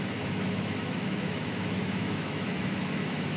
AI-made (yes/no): yes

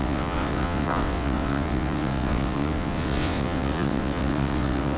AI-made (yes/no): yes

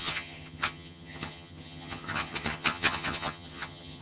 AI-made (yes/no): yes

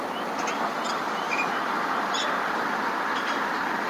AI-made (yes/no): no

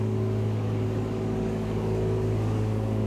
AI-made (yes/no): yes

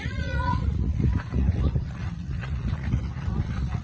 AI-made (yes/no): yes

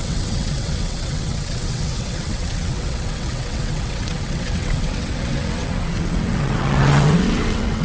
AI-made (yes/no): yes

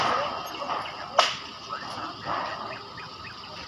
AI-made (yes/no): no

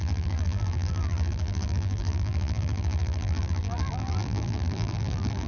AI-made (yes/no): yes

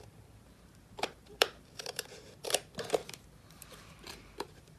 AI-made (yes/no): yes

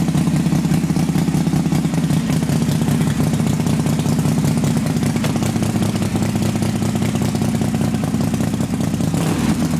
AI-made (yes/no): no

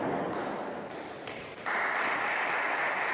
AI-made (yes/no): no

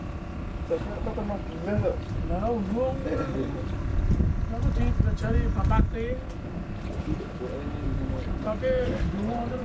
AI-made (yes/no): no